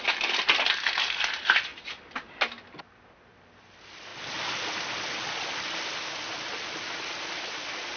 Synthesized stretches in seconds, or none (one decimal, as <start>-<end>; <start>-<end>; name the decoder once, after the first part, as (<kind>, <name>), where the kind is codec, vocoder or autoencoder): none